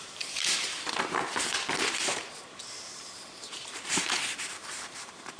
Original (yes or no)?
no